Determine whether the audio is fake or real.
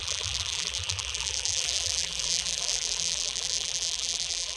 fake